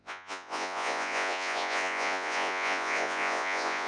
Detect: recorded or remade remade